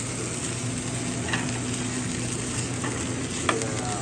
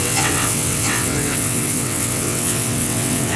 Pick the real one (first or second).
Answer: first